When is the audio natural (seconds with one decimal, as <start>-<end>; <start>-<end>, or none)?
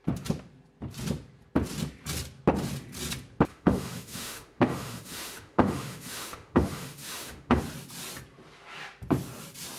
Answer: 0.0-3.5; 7.6-9.8